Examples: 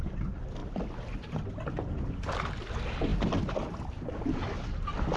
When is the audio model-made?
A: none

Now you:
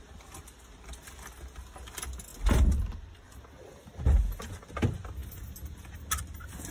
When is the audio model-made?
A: none

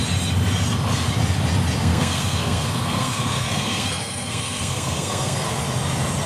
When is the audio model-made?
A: 1.8-5.6 (codec, SNAC)

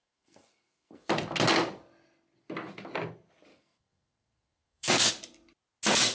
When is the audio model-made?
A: 0.0-1.1 (codec, SNAC); 3.5-5.1

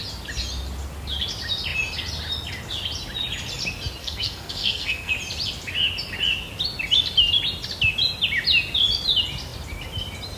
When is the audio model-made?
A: 4.0-5.1 (codec, SNAC)

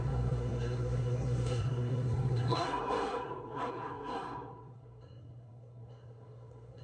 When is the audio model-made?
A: 0.0-6.8 (codec, SNAC)

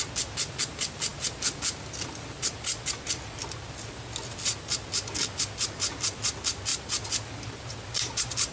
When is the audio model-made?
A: none

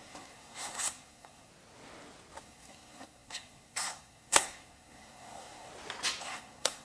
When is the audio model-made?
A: 0.0-1.5 (codec, SNAC); 2.4-5.7; 6.2-6.8